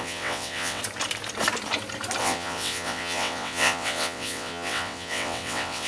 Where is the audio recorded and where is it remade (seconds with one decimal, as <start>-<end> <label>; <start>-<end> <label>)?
0.0-0.8 remade; 0.8-2.2 recorded; 2.2-5.9 remade